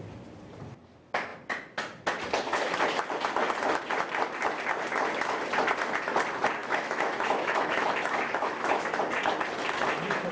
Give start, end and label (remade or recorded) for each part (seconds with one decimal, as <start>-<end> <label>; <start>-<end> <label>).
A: 0.0-6.6 recorded; 6.6-9.0 remade; 9.0-10.3 recorded